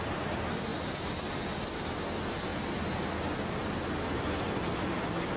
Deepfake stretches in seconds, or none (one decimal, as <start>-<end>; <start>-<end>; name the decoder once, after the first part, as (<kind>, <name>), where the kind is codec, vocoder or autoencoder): none